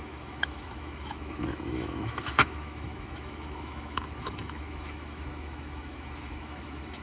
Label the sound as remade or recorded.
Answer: remade